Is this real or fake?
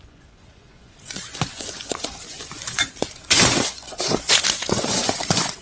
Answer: fake